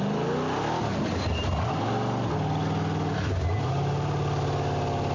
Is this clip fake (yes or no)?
no